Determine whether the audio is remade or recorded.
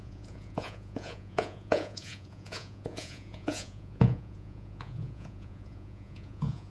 remade